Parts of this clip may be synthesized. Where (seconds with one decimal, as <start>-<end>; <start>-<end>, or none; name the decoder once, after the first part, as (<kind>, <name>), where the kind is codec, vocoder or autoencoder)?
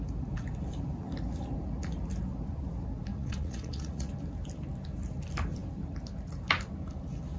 3.1-4.1 (vocoder, Vocos)